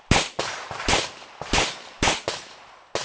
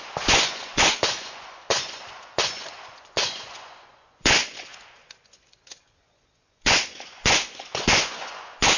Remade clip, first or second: second